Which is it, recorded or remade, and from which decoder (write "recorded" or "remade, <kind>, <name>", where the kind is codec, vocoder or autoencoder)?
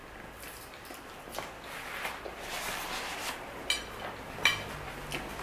recorded